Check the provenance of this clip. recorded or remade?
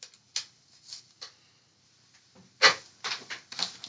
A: recorded